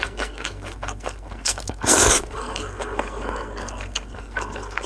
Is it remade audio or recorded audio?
remade